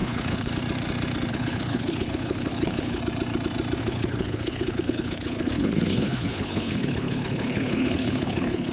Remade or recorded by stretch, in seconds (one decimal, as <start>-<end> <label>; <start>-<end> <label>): 0.0-0.5 remade; 0.5-1.3 recorded; 1.3-3.0 remade; 3.0-3.8 recorded; 3.8-8.7 remade